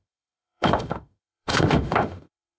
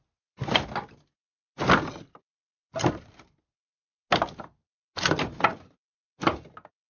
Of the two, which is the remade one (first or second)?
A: first